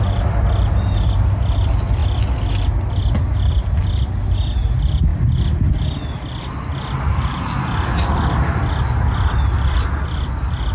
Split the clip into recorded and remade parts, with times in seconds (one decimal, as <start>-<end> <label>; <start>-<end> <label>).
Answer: 0.0-10.7 recorded